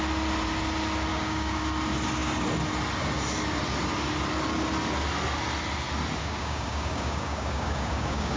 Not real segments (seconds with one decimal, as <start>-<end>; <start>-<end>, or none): 1.1-1.6; 6.2-8.4